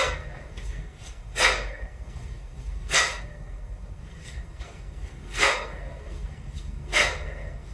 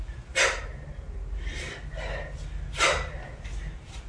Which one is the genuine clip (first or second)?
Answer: second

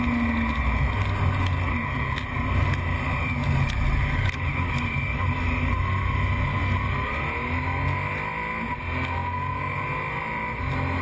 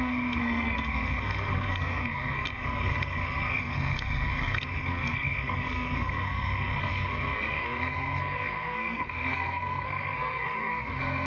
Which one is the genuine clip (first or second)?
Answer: first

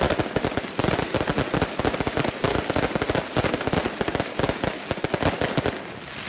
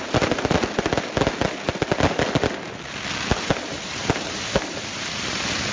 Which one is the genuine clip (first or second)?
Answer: first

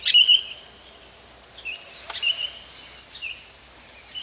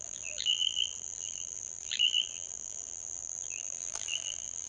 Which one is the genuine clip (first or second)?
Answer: first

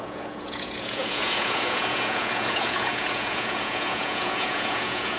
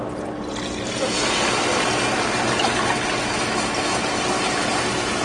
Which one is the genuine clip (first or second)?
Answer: second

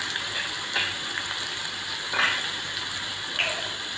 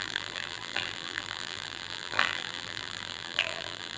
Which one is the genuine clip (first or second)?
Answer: first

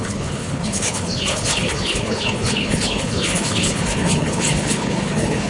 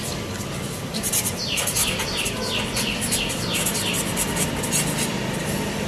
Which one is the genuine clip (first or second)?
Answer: second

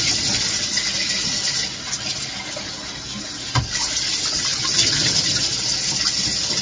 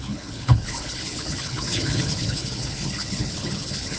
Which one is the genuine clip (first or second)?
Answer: first